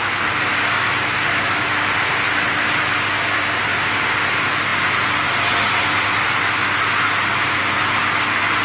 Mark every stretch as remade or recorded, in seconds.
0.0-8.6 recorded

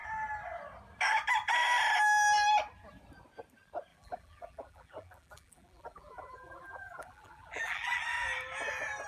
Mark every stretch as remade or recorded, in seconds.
0.0-3.9 recorded; 3.9-8.0 remade; 8.0-9.1 recorded